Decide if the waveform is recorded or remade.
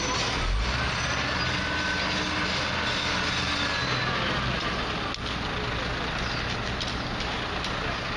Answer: recorded